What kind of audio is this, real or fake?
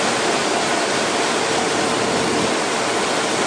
real